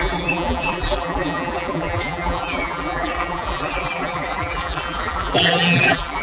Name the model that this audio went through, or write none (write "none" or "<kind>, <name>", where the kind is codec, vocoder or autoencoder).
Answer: vocoder, BigVGAN v2